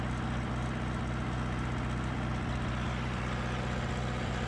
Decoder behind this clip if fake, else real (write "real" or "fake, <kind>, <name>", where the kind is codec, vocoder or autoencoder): real